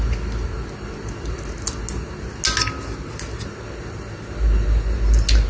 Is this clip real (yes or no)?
yes